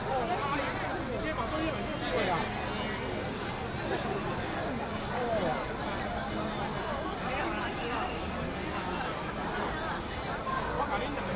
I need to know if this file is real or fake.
real